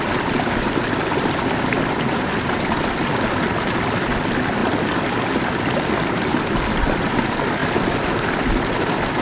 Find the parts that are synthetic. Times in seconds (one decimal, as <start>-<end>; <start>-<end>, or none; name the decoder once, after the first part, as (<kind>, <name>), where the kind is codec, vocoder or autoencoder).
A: none